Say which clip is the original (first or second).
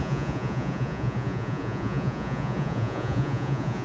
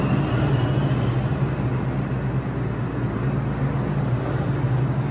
second